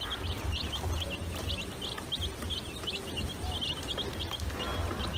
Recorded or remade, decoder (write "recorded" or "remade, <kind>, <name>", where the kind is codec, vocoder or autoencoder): recorded